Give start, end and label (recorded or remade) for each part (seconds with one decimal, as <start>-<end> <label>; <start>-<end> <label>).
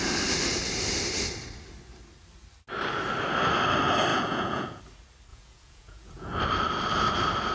0.0-4.1 recorded; 4.1-4.8 remade; 4.8-5.3 recorded; 5.3-6.4 remade; 6.4-7.5 recorded